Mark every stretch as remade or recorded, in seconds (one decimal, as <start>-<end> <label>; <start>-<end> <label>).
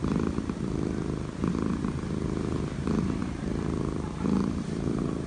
0.0-5.3 recorded